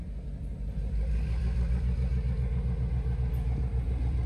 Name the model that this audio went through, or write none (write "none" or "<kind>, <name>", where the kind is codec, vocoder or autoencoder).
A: none